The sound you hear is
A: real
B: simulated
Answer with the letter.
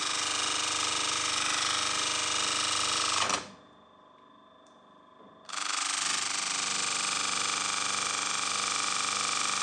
A